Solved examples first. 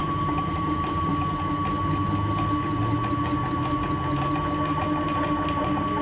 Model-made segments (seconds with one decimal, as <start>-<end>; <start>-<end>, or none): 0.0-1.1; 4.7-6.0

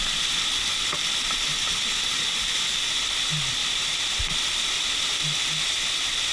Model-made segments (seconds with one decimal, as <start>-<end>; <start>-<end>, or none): none

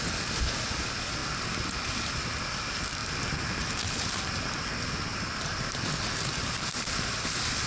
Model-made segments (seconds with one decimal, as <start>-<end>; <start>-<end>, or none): 5.1-5.8